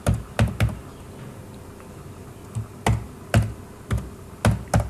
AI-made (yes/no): no